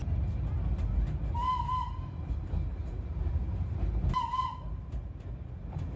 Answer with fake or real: real